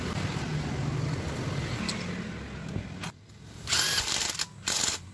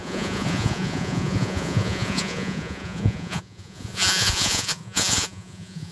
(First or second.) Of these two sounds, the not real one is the second